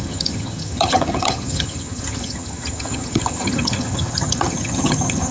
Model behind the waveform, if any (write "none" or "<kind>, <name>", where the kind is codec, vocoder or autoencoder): vocoder, HiFi-GAN